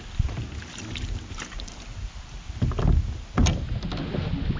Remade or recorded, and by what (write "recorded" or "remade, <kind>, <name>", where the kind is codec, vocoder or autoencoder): recorded